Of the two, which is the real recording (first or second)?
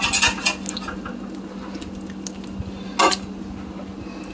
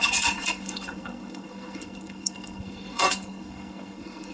first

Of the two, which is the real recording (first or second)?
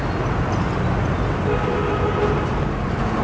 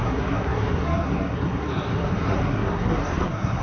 first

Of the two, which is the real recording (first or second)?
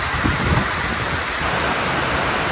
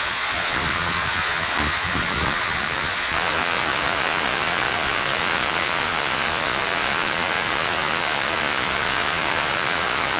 first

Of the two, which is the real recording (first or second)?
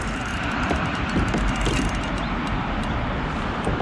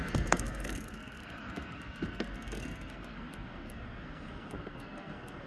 first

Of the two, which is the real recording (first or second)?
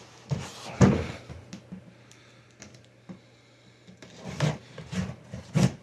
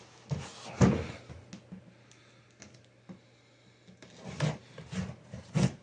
second